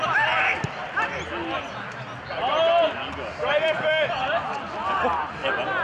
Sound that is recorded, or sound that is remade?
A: recorded